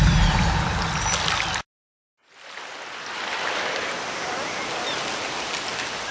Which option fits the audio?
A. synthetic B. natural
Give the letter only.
B